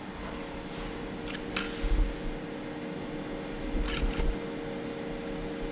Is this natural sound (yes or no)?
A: yes